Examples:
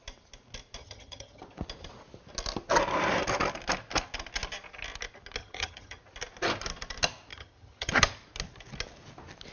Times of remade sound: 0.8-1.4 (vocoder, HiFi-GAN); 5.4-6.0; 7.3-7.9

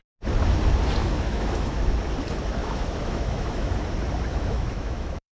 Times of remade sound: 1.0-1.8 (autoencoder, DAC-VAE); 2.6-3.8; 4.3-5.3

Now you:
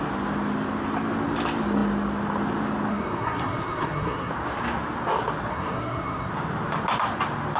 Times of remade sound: 2.9-4.3 (codec, SNAC); 5.5-6.3

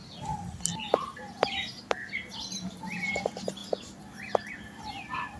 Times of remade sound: 1.0-1.7 (vocoder, BigVGAN v2); 2.3-3.6; 4.5-5.4

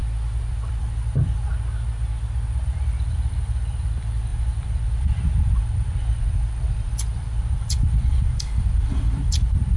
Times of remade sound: 0.5-1.5 (vocoder, BigVGAN v2); 2.6-9.8